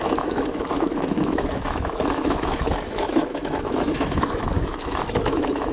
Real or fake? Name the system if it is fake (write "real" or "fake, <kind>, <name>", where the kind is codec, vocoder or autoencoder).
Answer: fake, autoencoder, DAC-VAE